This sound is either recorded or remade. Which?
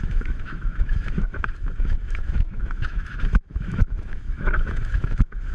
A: remade